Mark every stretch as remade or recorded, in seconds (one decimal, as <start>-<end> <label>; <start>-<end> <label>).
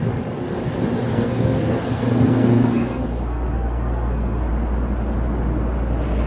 0.0-1.1 recorded; 1.1-4.5 remade; 4.5-6.3 recorded